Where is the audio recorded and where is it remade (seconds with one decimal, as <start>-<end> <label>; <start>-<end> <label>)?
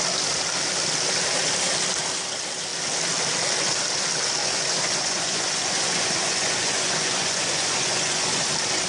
0.0-4.4 recorded; 4.4-8.5 remade; 8.5-8.9 recorded